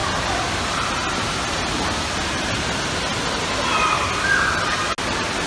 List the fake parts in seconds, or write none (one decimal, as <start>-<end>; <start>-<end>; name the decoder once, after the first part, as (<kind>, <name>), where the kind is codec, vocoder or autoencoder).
none